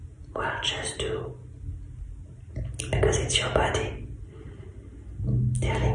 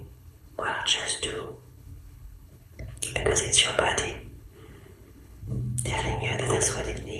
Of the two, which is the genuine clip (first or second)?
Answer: first